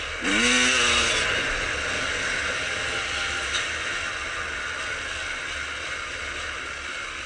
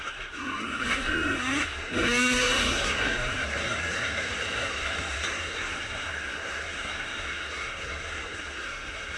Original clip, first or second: first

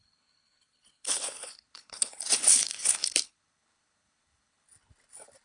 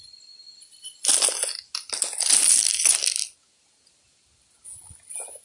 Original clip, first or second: second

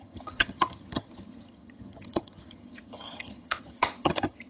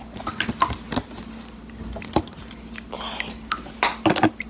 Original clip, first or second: second